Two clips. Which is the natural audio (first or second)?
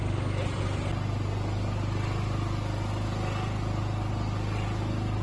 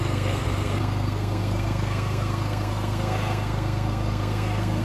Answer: first